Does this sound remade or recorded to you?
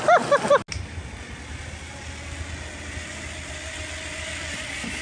recorded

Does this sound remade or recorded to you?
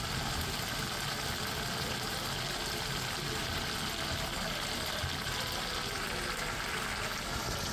recorded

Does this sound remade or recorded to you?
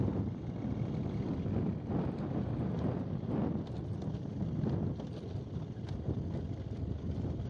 recorded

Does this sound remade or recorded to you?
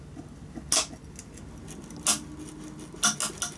recorded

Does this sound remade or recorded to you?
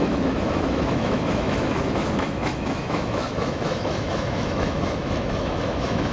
remade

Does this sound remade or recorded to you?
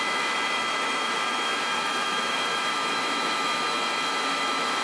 remade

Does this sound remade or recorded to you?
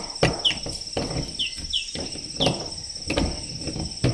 recorded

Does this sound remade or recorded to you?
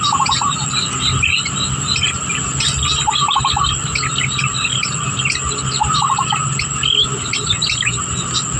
recorded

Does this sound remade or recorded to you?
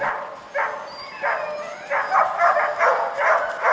recorded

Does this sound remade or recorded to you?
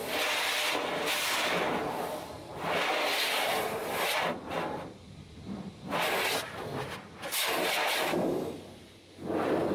recorded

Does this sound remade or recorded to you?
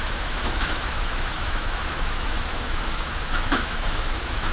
remade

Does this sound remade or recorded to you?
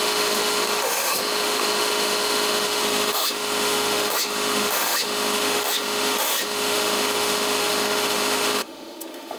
remade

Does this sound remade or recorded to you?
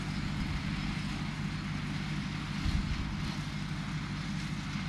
recorded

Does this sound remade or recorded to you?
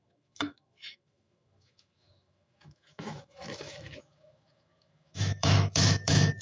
remade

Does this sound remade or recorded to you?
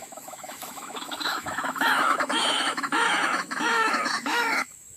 remade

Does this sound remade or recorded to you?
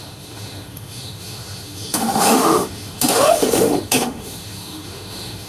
remade